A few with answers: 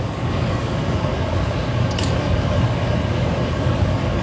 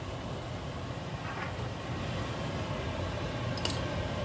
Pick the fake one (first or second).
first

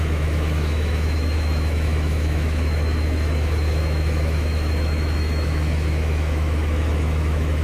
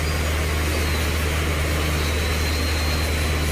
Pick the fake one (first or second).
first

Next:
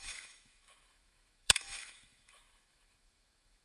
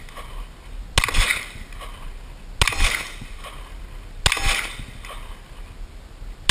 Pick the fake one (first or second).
first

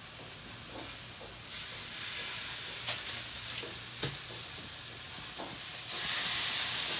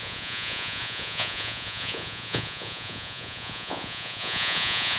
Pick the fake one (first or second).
second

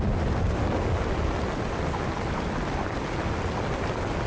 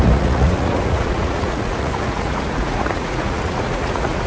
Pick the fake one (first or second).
second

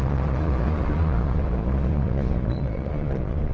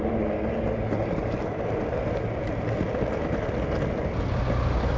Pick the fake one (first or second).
first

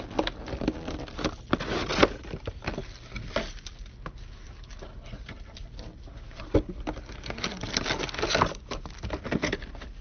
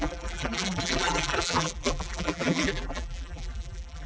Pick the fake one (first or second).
second